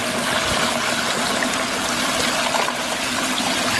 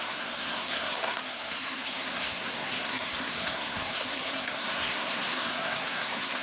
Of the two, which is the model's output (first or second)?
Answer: second